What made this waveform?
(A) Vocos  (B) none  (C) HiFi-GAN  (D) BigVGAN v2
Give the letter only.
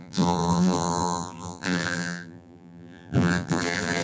D